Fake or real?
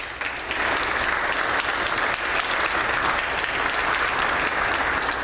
real